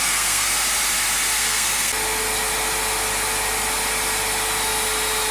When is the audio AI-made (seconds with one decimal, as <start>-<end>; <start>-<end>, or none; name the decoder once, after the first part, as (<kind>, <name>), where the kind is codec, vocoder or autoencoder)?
0.0-0.5 (codec, SNAC); 1.4-1.9